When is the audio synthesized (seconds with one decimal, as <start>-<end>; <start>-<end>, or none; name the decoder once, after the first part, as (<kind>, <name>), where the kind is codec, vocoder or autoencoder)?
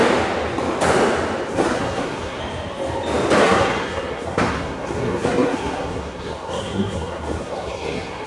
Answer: 1.5-2.4 (codec, SNAC); 3.4-8.3